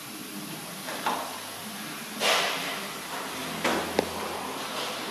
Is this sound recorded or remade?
recorded